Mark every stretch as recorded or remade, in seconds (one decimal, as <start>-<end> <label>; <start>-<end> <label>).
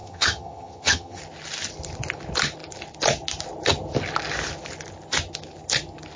0.0-1.2 remade; 1.2-6.2 recorded